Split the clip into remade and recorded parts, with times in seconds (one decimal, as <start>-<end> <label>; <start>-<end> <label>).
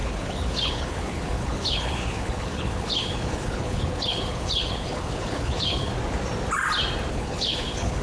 0.0-5.9 remade; 5.9-7.1 recorded; 7.1-8.0 remade